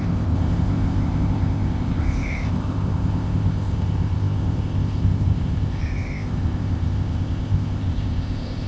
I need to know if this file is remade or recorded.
remade